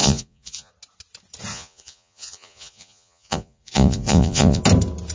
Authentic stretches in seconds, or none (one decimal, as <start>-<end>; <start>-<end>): 0.7-1.5; 4.6-5.1